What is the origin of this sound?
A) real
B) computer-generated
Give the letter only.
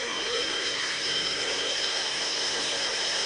B